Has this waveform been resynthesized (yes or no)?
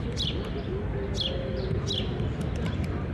no